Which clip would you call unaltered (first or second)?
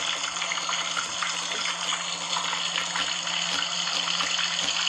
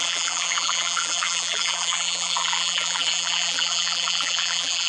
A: first